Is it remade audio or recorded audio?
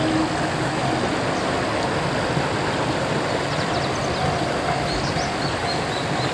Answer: recorded